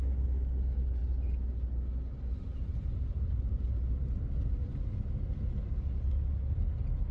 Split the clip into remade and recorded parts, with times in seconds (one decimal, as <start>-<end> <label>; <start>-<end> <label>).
0.0-7.1 recorded